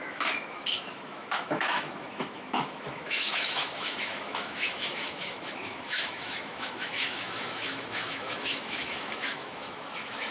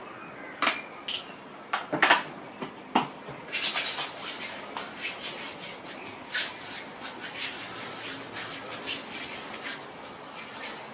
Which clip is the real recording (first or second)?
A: second